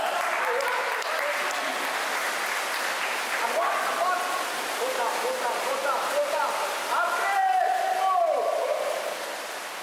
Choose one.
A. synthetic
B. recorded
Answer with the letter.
B